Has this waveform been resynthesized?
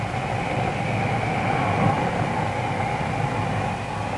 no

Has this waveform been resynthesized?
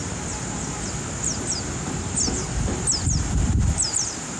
no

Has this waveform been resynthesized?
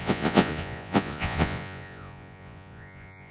yes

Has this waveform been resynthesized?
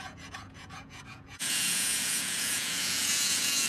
yes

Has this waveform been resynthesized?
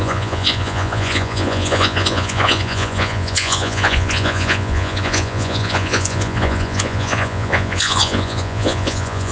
yes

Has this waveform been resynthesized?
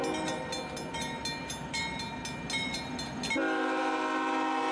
no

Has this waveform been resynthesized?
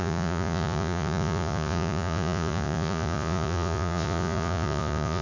yes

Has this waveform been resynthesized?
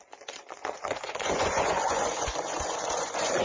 yes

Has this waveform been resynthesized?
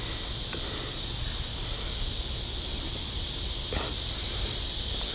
no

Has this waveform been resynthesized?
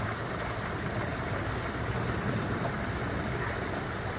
no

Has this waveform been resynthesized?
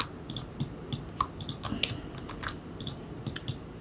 no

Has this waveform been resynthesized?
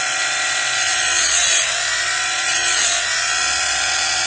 yes